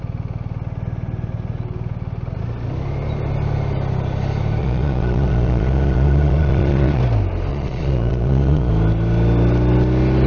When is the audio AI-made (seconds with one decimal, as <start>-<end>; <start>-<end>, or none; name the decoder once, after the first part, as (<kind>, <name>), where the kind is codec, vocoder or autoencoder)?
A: 4.6-7.0 (vocoder, Vocos); 7.5-8.7

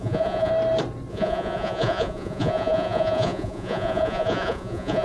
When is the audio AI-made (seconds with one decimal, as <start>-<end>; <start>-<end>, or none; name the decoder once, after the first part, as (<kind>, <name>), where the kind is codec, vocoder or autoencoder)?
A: 0.0-0.5 (vocoder, Vocos); 1.1-5.0

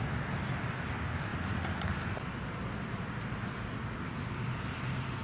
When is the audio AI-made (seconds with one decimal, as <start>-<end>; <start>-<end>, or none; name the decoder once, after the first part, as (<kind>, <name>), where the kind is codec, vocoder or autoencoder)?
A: none

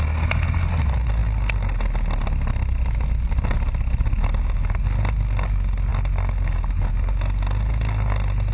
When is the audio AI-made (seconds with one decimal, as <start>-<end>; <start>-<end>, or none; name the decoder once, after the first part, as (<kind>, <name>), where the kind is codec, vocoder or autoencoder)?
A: none

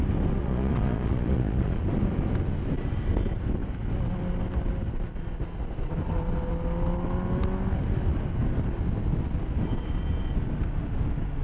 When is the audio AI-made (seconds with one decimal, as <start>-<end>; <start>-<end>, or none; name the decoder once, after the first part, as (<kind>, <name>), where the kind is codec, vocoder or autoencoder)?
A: 0.4-1.8 (vocoder, Vocos)

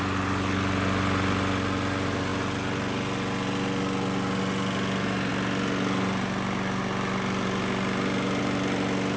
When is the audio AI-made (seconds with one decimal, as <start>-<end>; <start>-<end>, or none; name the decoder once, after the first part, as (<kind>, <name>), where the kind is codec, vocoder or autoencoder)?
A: none